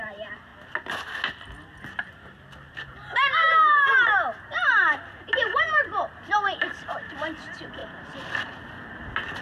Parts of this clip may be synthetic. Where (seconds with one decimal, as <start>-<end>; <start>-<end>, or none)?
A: 0.0-0.5; 2.7-3.3; 5.1-7.8

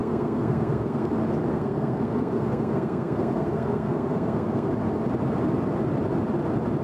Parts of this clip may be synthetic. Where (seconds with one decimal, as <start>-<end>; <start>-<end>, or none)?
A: 0.0-1.1; 1.5-4.7